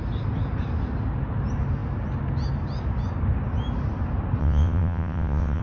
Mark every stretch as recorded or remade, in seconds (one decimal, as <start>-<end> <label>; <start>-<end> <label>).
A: 0.0-4.4 recorded; 4.4-5.6 remade